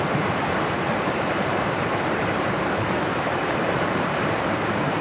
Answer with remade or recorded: remade